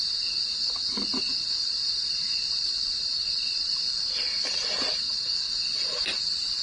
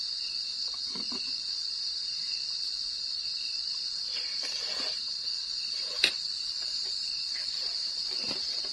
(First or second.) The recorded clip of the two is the first